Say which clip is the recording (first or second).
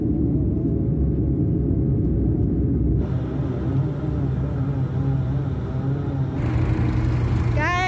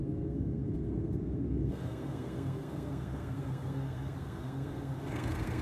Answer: first